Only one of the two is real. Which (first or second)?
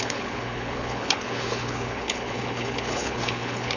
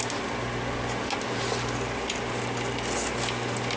second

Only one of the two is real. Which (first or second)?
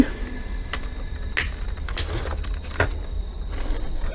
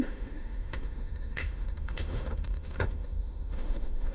first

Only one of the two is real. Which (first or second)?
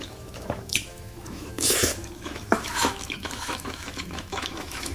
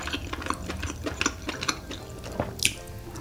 second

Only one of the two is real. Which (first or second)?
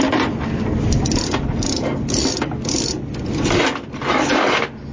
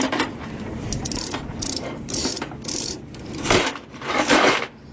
first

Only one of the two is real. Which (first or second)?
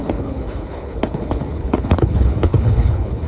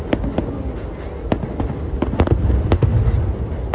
second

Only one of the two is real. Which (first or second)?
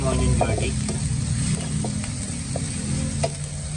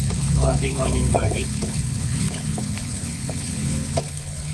first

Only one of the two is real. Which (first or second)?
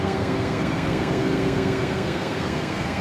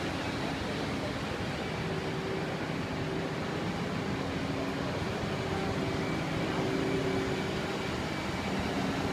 second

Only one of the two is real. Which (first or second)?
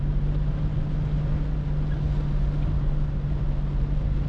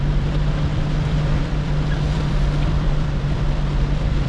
first